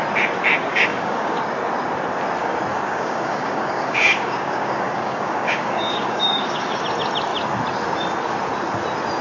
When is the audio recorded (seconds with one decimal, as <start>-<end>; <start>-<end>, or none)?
0.0-0.7; 1.4-2.7; 6.8-9.2